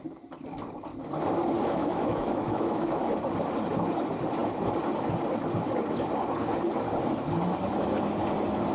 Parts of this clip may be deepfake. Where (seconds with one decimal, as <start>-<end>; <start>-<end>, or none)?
1.6-3.0